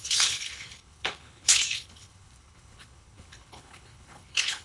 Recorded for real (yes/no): no